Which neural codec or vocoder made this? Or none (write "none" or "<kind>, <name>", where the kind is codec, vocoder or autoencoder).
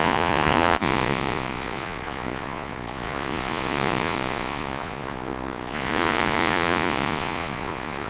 vocoder, Vocos